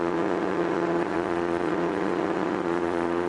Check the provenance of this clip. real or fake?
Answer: fake